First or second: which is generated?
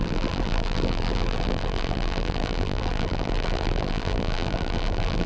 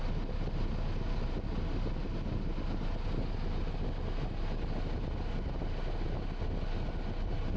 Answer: first